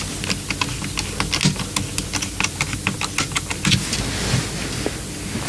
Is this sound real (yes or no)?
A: yes